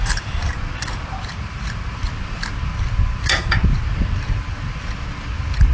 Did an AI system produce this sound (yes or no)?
no